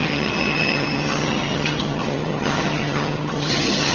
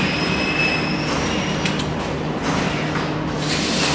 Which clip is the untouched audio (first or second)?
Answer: second